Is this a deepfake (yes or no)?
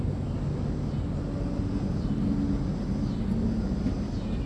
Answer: no